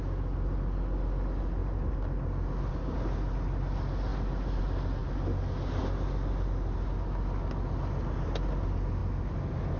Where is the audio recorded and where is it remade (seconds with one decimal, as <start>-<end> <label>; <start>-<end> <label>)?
0.0-9.8 recorded